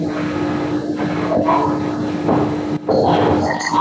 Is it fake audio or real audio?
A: real